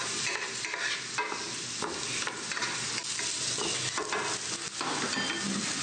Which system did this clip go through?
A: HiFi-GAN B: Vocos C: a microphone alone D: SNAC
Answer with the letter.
C